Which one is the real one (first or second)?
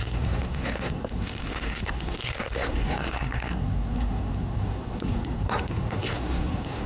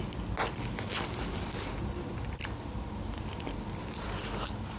second